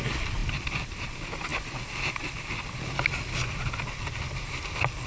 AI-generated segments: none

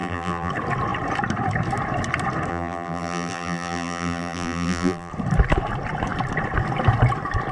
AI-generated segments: 0.0-0.5; 2.5-5.1

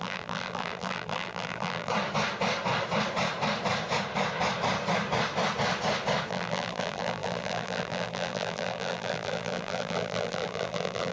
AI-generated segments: 0.0-1.9; 6.3-11.1

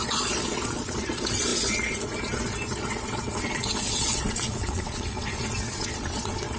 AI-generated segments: 0.0-6.6

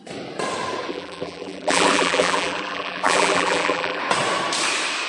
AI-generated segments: 0.9-4.0

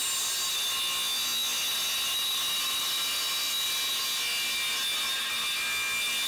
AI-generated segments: none

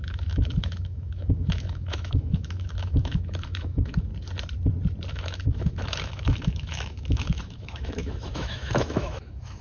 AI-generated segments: 0.0-4.1; 5.1-9.6